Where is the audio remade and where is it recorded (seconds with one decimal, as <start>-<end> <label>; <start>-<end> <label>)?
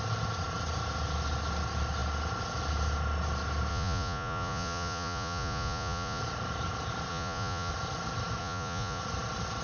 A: 0.0-3.7 recorded; 3.7-6.2 remade; 6.2-7.1 recorded; 7.1-7.7 remade; 7.7-8.4 recorded; 8.4-9.0 remade; 9.0-9.6 recorded